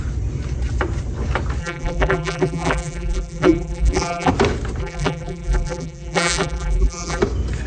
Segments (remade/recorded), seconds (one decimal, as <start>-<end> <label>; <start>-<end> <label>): 0.0-1.6 recorded; 1.6-4.3 remade; 4.3-4.8 recorded; 4.8-7.2 remade; 7.2-7.7 recorded